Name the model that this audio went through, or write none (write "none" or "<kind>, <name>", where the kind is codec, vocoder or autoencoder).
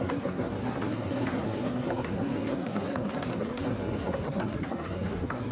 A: codec, SNAC